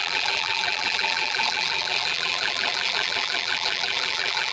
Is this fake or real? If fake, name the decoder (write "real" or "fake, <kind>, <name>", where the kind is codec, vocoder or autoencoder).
fake, vocoder, BigVGAN v2